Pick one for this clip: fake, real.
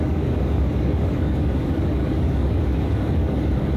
fake